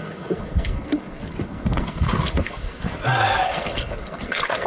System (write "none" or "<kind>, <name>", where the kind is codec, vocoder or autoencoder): codec, SNAC